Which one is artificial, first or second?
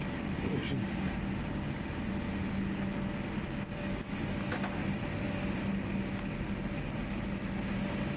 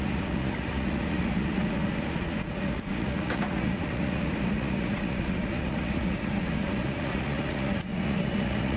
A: second